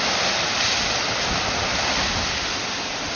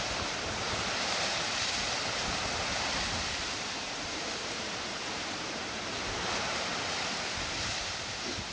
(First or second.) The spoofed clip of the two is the second